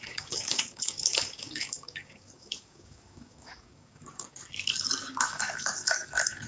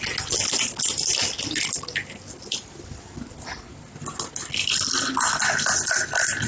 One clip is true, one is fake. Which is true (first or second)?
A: second